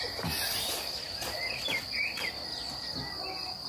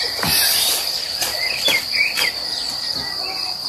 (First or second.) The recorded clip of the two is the first